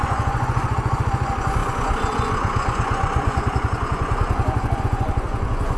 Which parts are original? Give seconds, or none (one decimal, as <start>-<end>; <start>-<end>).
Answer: none